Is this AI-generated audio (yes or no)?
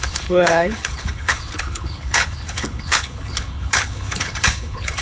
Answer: yes